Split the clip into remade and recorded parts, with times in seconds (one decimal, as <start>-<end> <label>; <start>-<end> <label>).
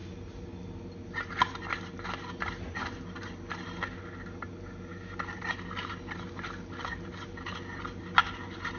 0.0-8.8 recorded